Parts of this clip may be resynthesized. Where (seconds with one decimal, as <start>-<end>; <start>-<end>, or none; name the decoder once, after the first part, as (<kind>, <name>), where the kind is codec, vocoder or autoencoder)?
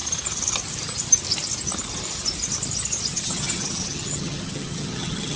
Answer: 3.1-5.4 (vocoder, HiFi-GAN)